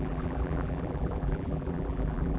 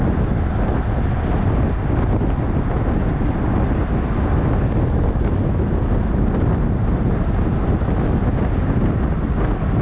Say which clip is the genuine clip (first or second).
second